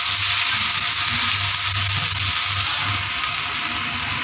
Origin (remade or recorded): recorded